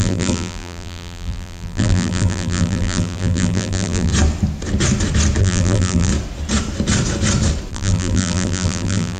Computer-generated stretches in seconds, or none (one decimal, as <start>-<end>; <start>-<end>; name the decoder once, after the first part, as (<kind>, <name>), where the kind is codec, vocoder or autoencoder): 0.0-4.1 (vocoder, BigVGAN v2); 5.4-6.1; 7.7-9.2